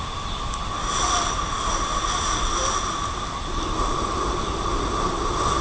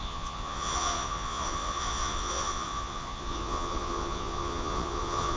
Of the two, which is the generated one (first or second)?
second